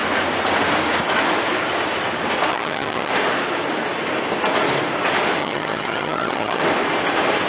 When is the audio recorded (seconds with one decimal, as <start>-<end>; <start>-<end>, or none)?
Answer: 0.0-2.5; 3.1-5.4; 6.6-7.5